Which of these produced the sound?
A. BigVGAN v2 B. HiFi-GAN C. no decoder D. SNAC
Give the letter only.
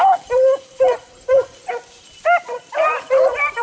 C